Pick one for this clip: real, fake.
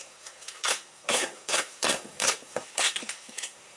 fake